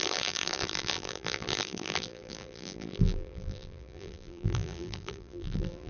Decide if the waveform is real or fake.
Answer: fake